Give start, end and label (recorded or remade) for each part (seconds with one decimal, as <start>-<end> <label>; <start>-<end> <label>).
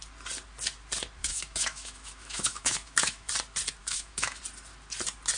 0.0-1.2 recorded; 1.2-3.3 remade; 3.3-3.8 recorded; 3.8-4.4 remade; 4.4-5.4 recorded